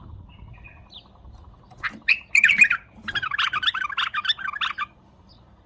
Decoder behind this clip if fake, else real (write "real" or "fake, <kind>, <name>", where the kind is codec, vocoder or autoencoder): real